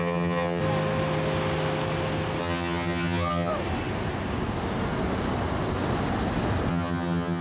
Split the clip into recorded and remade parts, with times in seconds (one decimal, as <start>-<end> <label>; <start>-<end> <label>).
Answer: 0.0-0.6 remade; 0.6-2.4 recorded; 2.4-3.5 remade; 3.5-6.7 recorded; 6.7-7.4 remade